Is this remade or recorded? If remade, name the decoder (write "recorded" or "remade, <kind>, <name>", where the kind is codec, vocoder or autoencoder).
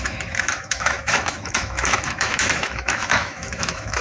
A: remade, autoencoder, DAC-VAE